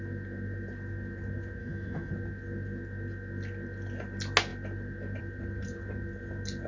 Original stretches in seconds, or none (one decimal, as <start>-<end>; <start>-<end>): 0.0-1.6; 2.1-6.7